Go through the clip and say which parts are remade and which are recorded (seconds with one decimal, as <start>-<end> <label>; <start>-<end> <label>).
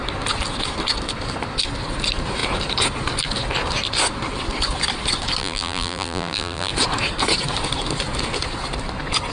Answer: 0.0-5.4 recorded; 5.4-6.7 remade; 6.7-9.3 recorded